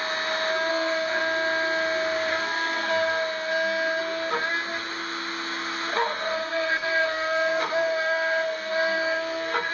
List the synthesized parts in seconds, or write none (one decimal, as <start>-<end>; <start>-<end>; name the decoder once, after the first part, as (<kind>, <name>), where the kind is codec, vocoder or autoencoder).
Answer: 0.7-1.2 (codec, SNAC); 2.3-2.9; 5.9-9.7